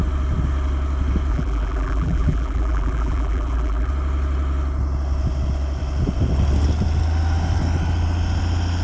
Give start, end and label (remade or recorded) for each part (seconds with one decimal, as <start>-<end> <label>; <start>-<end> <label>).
0.0-1.3 recorded; 1.3-3.9 remade; 3.9-8.8 recorded